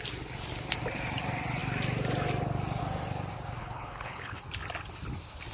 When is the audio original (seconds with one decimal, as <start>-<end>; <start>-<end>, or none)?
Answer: 0.0-3.6; 4.4-5.5